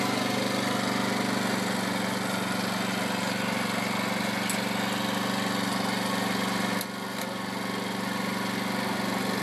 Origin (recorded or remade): recorded